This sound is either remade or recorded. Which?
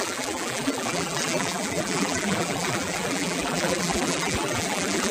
remade